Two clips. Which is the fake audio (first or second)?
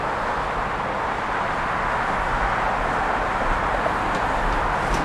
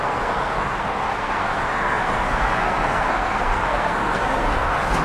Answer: second